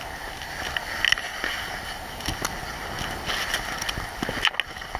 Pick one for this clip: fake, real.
real